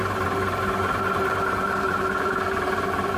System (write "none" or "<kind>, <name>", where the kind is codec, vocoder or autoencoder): vocoder, BigVGAN v2